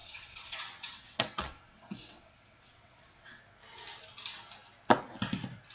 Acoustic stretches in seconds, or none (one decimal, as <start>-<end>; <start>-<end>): 3.4-5.7